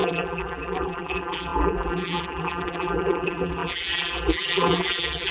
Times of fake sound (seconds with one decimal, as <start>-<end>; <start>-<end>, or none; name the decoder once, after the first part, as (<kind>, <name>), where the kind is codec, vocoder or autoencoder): 0.0-5.3 (vocoder, BigVGAN v2)